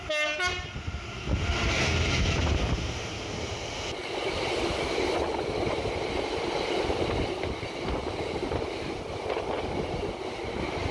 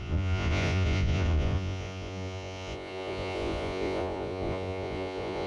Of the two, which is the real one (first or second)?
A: first